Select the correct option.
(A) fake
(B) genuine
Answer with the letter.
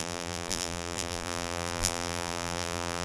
A